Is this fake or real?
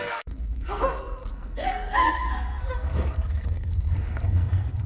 fake